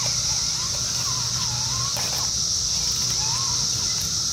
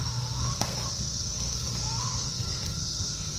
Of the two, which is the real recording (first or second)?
first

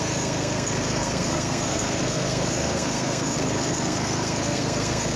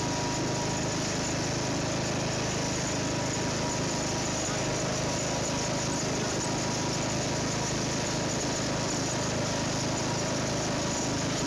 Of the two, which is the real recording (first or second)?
second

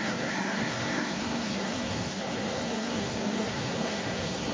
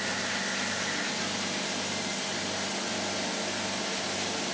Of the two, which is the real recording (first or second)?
second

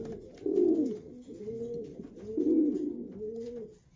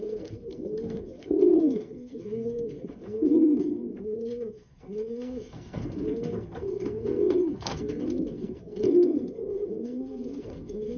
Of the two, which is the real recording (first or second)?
first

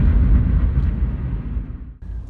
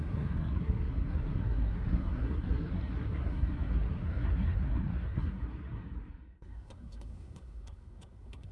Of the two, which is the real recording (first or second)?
first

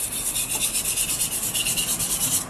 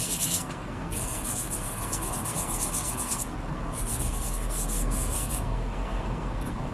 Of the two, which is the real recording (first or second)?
first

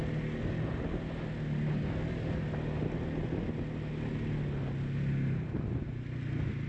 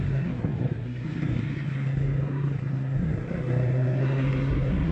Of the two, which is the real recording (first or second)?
first